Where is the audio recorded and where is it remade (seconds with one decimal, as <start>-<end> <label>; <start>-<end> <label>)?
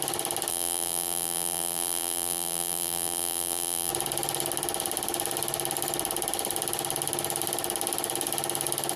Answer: 0.0-0.5 recorded; 0.5-3.9 remade; 3.9-9.0 recorded